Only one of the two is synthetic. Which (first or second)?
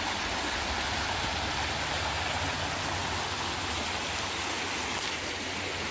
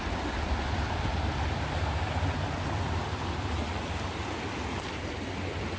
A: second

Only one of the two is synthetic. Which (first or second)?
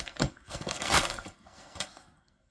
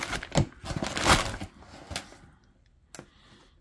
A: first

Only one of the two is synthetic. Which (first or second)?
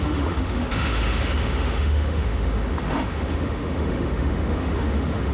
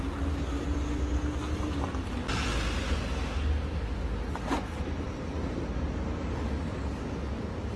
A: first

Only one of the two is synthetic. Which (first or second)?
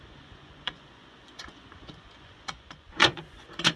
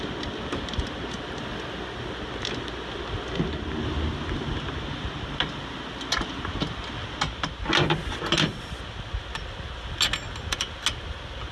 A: first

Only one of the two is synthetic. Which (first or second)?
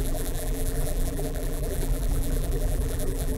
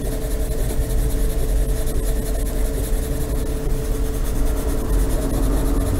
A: first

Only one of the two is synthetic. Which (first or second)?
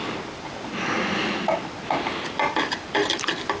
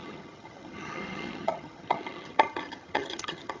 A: second